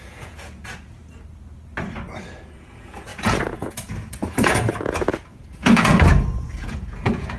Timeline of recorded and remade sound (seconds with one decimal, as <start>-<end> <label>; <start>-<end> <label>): 0.0-1.0 remade; 1.0-2.2 recorded; 2.2-7.4 remade